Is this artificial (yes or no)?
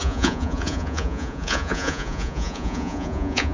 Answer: yes